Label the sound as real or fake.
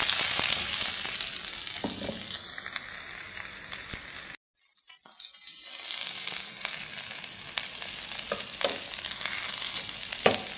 real